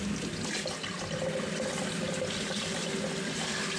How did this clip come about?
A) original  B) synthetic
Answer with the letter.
A